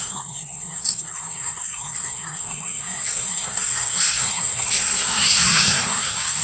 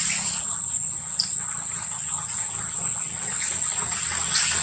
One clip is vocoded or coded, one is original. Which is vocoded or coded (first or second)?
first